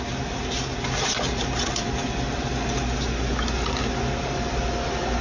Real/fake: real